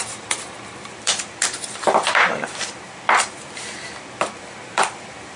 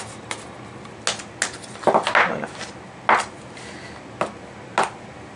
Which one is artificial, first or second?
first